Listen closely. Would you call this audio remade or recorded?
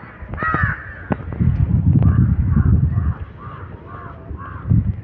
recorded